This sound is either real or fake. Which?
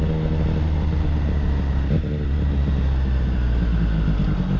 real